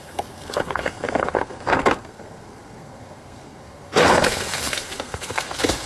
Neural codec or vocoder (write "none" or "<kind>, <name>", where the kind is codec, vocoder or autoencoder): codec, SNAC